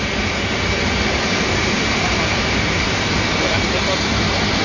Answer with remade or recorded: remade